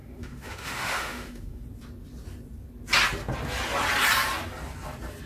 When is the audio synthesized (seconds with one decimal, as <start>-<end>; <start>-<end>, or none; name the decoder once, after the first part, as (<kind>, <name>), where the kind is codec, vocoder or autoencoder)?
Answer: 0.0-1.6 (autoencoder, DAC-VAE)